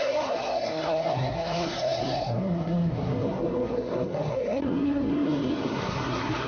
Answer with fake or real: fake